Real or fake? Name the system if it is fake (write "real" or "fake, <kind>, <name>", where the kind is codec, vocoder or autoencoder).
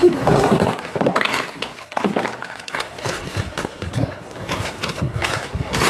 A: fake, codec, SNAC